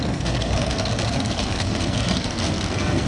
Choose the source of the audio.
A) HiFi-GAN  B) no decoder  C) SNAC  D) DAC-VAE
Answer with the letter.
C